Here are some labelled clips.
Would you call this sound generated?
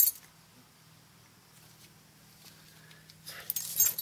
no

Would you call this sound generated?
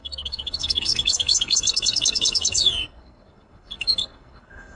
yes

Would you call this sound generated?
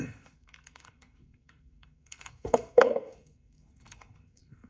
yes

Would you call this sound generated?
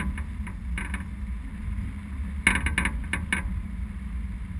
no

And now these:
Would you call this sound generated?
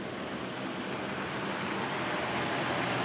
no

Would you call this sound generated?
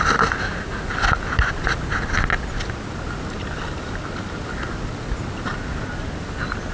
no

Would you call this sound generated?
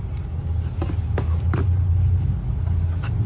no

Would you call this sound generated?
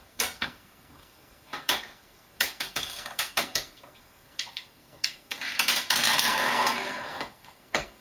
yes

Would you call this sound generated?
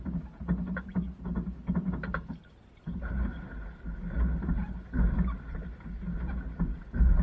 no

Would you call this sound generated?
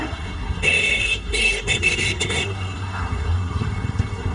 yes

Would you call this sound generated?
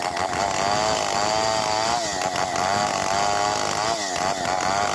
no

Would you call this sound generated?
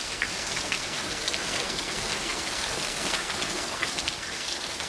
yes